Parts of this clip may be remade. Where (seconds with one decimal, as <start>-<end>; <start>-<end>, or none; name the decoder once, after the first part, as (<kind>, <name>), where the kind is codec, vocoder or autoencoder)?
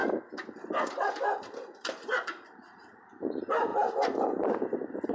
0.0-3.1 (vocoder, BigVGAN v2)